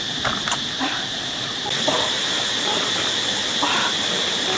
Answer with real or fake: fake